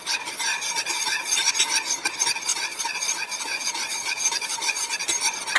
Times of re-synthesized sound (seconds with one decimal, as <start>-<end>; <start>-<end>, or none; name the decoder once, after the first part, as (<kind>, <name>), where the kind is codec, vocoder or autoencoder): 0.5-1.5 (vocoder, Vocos); 2.5-5.1